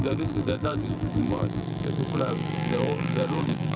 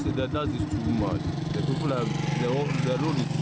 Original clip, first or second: second